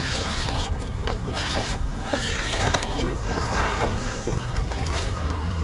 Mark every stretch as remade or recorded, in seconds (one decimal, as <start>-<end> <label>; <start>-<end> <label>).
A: 0.0-5.6 remade